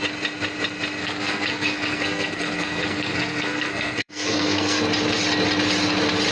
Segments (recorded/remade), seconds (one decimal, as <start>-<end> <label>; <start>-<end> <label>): 0.0-1.0 recorded; 1.0-4.8 remade; 4.8-6.3 recorded